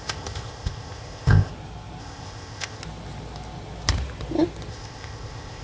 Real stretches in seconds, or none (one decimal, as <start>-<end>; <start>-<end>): 1.5-2.0; 2.8-4.7